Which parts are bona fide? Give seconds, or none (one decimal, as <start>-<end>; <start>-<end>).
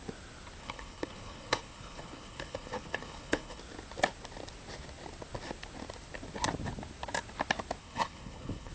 0.0-0.6; 3.6-7.8